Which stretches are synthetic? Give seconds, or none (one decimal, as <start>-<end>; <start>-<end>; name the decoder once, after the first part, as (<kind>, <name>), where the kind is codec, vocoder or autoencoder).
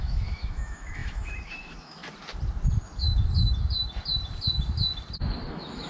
0.0-2.0 (autoencoder, DAC-VAE); 5.5-5.9